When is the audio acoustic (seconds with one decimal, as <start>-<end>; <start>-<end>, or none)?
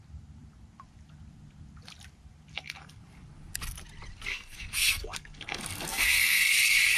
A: 0.0-2.5; 3.0-4.3; 6.5-7.0